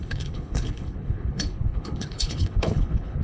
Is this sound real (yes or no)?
no